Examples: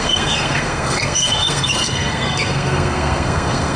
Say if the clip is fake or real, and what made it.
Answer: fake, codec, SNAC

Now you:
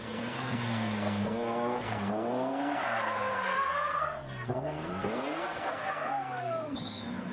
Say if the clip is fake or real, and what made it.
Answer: fake, codec, SNAC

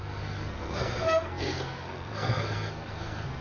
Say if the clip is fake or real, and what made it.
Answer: fake, codec, SNAC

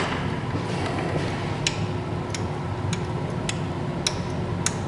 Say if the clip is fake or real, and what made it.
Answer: real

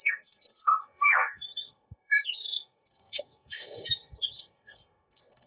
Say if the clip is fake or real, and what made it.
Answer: fake, codec, SNAC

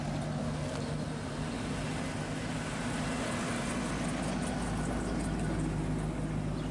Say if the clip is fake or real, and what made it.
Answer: real